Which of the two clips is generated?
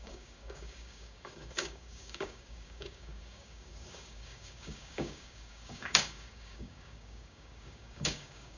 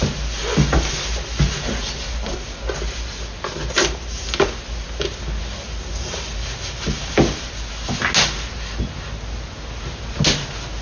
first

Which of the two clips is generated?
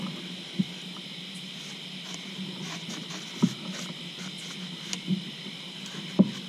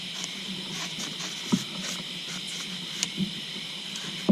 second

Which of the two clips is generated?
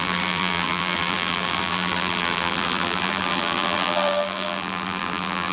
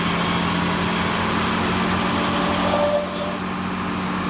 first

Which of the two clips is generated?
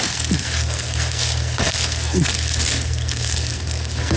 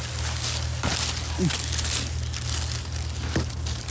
first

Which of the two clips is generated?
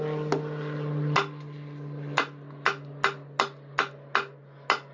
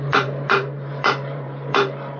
second